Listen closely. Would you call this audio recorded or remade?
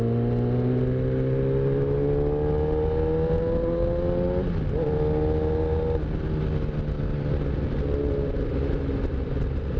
recorded